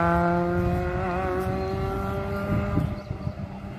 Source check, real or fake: real